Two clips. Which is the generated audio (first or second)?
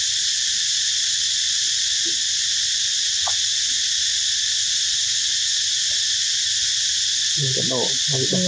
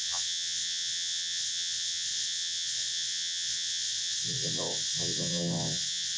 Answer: second